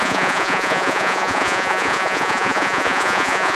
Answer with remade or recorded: remade